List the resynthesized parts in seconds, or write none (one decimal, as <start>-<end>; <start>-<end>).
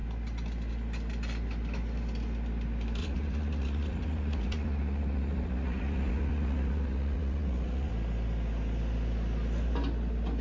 3.0-7.9